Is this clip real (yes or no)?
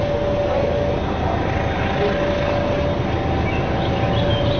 yes